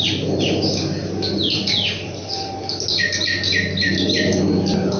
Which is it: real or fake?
real